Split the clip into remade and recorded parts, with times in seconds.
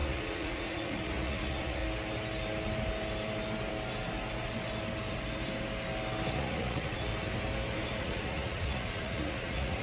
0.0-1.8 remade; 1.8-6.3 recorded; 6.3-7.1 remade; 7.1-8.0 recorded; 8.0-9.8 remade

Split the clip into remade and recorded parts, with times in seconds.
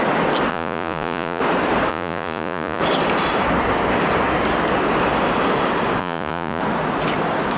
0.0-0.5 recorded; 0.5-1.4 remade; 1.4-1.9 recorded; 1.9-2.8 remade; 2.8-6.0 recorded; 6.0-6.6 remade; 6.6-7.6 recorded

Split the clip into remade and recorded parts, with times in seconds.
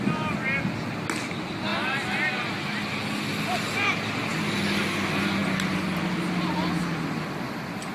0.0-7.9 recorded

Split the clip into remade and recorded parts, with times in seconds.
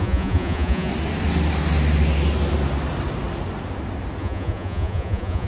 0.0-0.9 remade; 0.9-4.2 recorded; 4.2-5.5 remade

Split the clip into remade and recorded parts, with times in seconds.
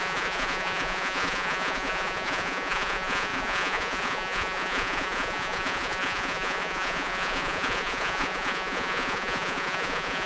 0.0-10.3 remade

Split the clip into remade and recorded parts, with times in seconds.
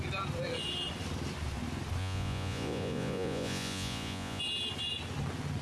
0.0-2.0 recorded; 2.0-4.4 remade; 4.4-5.6 recorded